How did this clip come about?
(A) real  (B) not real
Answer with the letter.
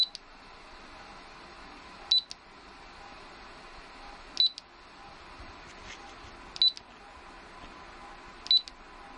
A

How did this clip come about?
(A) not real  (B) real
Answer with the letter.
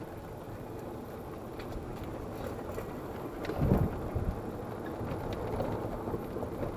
B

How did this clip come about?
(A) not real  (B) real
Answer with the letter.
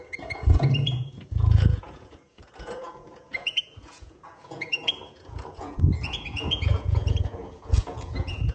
A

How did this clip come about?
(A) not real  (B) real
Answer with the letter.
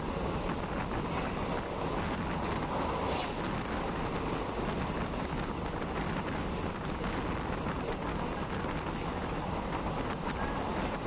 B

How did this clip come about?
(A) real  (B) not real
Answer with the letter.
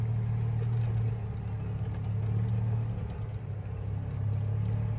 A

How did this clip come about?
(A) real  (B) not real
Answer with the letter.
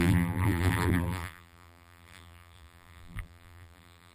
B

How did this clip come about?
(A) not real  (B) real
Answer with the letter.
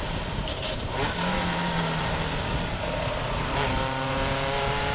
A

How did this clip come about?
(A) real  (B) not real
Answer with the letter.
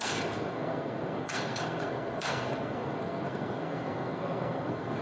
B